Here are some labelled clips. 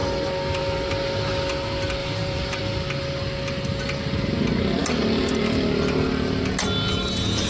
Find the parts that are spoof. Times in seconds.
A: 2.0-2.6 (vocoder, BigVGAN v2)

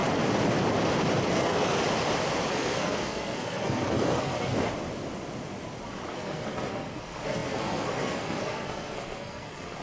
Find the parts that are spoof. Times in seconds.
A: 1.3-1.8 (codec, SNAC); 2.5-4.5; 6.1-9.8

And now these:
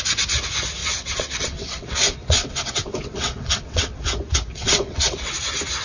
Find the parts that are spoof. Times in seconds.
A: 0.8-4.0 (vocoder, WaveNeXt); 4.5-5.3

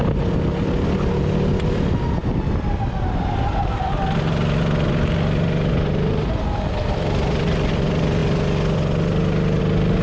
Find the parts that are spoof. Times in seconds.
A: none

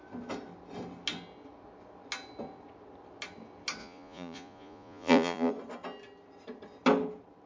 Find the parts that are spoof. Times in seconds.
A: 3.8-5.5 (vocoder, Vocos)

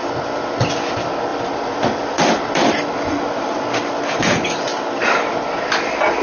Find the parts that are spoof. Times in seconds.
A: 1.3-3.8 (vocoder, BigVGAN v2)